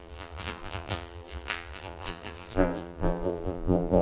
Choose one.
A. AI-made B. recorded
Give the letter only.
A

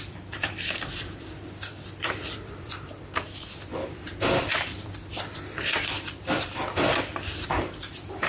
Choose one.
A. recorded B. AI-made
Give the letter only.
B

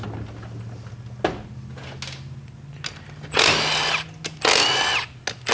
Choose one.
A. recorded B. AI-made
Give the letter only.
A